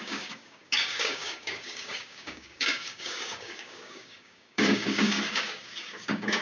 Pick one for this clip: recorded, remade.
remade